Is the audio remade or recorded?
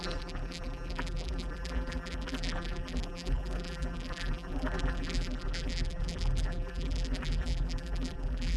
remade